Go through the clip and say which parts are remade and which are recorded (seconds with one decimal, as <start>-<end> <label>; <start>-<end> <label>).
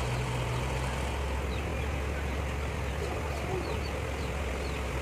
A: 0.0-5.0 recorded